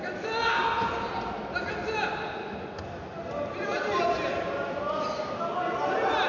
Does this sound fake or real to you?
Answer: real